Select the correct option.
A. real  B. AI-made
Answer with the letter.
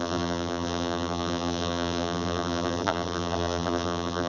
B